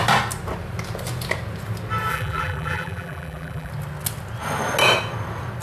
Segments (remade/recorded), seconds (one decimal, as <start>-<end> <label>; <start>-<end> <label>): 0.0-2.1 recorded; 2.1-3.7 remade; 3.7-5.6 recorded